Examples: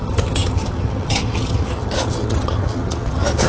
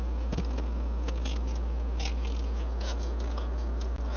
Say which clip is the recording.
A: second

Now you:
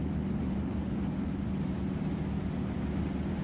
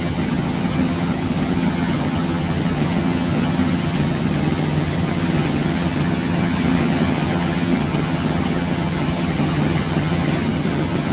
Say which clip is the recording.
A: first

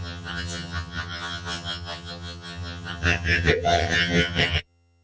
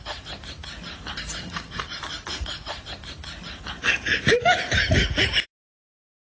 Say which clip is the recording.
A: second